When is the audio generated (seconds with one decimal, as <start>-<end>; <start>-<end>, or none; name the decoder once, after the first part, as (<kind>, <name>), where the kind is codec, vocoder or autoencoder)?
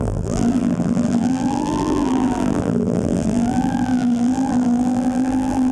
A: 0.0-5.7 (vocoder, BigVGAN v2)